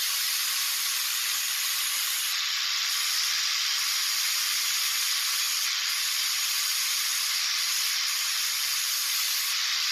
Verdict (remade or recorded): recorded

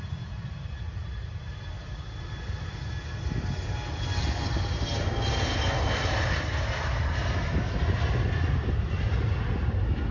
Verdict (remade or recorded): recorded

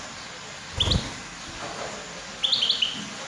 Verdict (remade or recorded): recorded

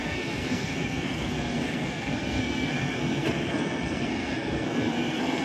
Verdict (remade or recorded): remade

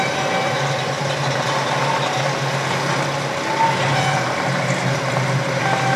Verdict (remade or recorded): recorded